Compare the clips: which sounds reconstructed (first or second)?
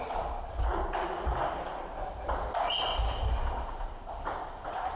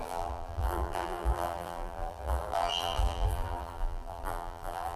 second